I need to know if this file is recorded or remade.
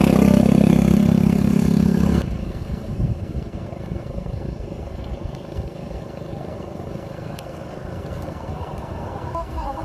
remade